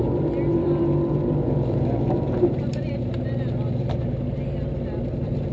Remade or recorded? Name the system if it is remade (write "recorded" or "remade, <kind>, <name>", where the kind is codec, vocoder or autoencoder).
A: remade, vocoder, BigVGAN v2